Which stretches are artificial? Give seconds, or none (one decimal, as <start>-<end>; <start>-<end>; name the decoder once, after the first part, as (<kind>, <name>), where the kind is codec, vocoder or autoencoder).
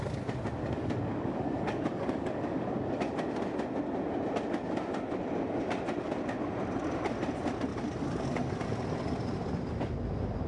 0.6-3.0 (codec, DAC); 7.7-8.5